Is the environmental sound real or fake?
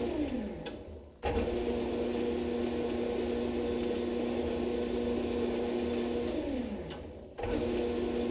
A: real